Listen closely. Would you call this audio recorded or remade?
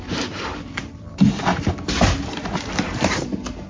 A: recorded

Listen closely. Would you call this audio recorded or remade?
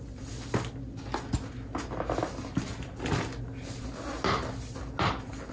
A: recorded